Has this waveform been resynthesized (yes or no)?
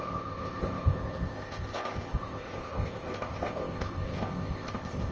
yes